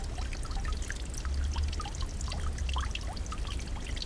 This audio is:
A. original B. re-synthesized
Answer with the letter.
A